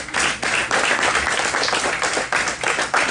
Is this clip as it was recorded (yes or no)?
yes